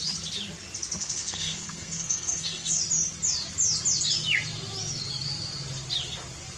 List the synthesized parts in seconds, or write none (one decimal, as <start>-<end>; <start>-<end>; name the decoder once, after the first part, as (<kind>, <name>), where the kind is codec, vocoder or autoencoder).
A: 1.0-2.8 (codec, SNAC)

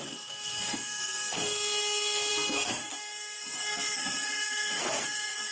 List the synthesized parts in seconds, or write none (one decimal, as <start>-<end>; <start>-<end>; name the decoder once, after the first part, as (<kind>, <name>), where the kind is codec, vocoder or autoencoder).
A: 0.0-5.5 (codec, SNAC)